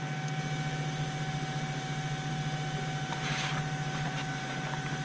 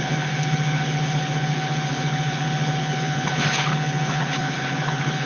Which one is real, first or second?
first